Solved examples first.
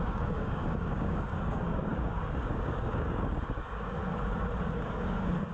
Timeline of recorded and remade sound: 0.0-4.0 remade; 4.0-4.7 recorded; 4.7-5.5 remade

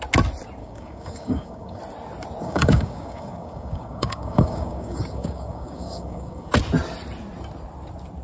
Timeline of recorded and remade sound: 0.0-0.6 recorded; 0.6-1.8 remade; 1.8-2.4 recorded; 2.4-6.5 remade; 6.5-8.2 recorded